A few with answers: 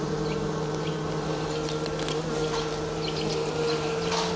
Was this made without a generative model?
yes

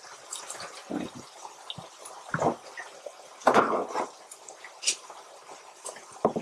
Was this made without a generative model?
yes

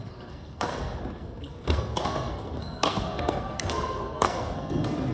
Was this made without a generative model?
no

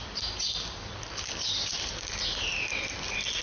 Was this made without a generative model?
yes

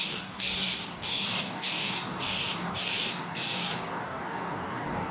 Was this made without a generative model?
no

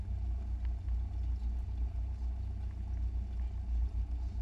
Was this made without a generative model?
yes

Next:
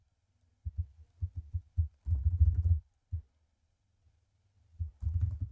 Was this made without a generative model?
yes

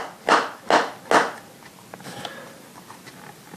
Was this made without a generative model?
yes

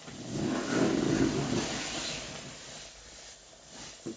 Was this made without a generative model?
yes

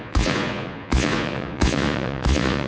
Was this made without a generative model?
no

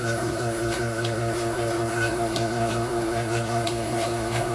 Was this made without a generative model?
no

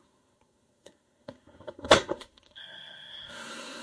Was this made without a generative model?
no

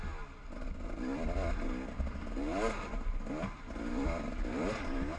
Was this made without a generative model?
yes